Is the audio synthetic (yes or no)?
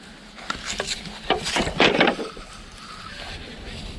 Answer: no